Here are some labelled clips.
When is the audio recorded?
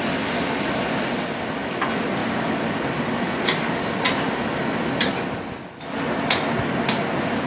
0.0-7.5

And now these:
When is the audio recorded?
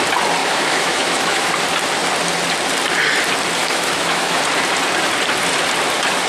0.0-0.4; 1.5-3.6; 4.4-6.3